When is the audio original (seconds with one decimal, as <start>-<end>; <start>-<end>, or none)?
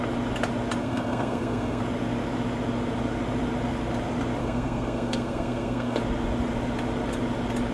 0.0-0.8; 1.8-4.4; 6.0-7.7